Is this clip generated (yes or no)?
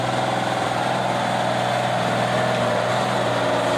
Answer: no